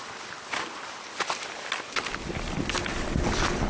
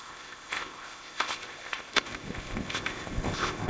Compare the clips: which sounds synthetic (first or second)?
second